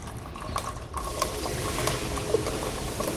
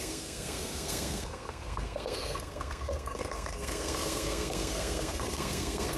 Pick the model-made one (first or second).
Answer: second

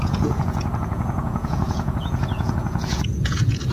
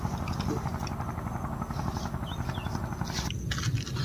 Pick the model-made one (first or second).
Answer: first